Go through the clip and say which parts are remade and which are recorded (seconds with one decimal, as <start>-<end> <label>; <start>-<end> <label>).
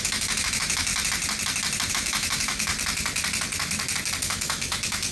0.0-0.9 remade; 0.9-1.9 recorded; 1.9-2.7 remade; 2.7-4.2 recorded; 4.2-5.1 remade